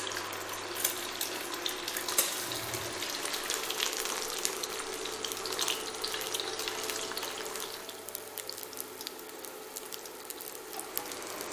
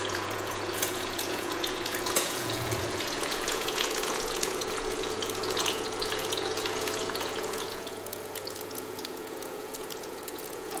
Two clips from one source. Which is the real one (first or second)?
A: first